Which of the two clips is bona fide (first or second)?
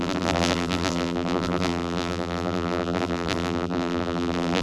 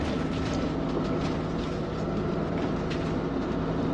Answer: second